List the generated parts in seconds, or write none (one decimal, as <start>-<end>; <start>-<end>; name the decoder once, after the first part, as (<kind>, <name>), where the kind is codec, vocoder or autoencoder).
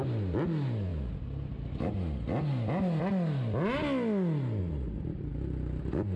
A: none